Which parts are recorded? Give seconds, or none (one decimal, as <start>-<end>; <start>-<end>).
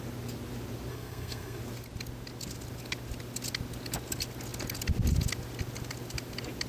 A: 0.0-0.9; 1.6-6.7